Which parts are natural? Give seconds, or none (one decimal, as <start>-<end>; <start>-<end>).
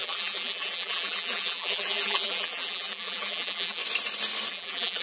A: 3.8-4.5